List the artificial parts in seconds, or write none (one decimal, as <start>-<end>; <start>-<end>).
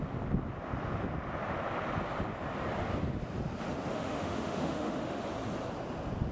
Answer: 3.9-5.2